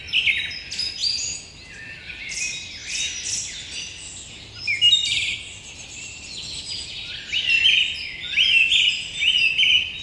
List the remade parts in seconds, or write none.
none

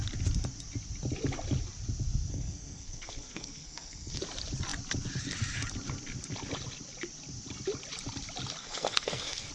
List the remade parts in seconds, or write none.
2.3-4.2; 8.6-9.5

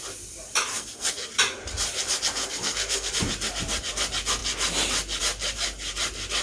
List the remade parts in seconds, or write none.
0.7-1.3; 2.4-3.1

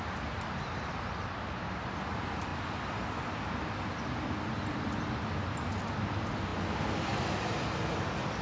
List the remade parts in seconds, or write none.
none